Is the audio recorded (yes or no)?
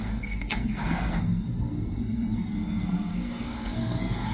no